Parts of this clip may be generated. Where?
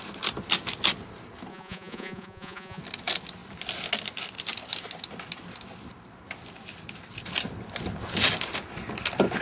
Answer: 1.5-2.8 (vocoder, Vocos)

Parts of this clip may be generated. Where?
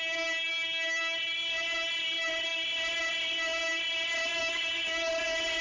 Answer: 4.3-5.1 (autoencoder, DAC-VAE)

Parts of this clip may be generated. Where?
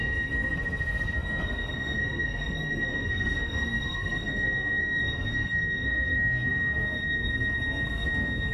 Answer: 0.0-8.5 (codec, SNAC)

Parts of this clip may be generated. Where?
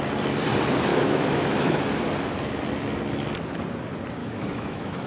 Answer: 0.9-1.8 (autoencoder, DAC-VAE); 4.2-5.1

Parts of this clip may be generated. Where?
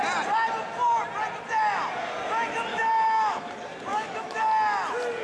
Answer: 2.7-3.5 (autoencoder, DAC-VAE); 3.9-4.4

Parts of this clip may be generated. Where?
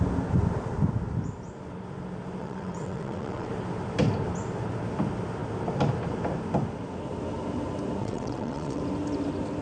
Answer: 2.4-3.5 (vocoder, WaveNeXt); 8.0-8.8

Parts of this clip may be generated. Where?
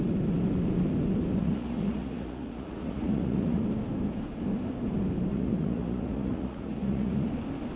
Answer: 1.4-3.6 (vocoder, Vocos); 5.3-7.3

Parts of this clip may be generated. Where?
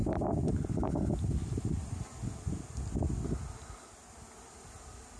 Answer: none